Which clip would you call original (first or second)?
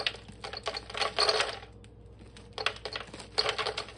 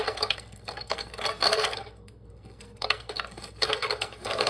first